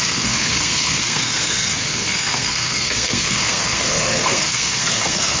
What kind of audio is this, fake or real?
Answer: fake